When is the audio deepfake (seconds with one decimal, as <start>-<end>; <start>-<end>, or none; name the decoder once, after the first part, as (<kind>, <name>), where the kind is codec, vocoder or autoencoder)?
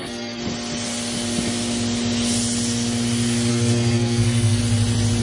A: 0.0-0.4 (codec, SNAC); 3.5-4.6